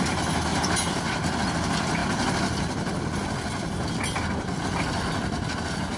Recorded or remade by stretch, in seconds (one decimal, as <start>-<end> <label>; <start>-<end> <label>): 0.0-0.5 recorded; 0.5-1.3 remade; 1.3-6.0 recorded